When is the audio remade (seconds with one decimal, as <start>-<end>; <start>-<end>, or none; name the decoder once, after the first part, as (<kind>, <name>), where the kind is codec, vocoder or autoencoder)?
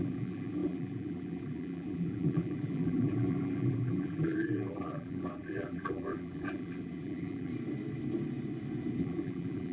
0.0-7.5 (vocoder, BigVGAN v2); 9.0-9.7